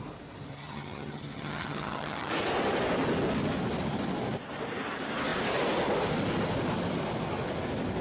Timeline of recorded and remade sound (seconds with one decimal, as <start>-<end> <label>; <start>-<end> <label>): 0.0-0.5 recorded; 0.5-2.3 remade; 2.3-8.0 recorded